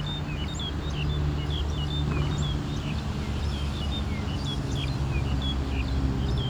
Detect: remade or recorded recorded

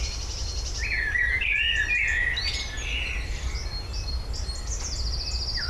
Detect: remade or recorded recorded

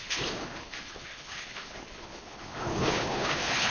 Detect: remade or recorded remade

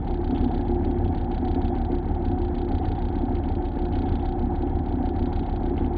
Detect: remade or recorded recorded